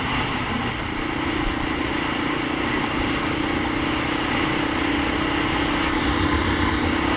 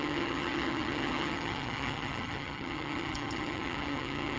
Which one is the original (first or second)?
first